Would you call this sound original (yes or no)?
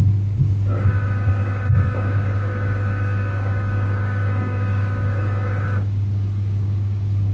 no